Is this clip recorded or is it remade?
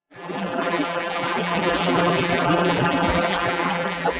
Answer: remade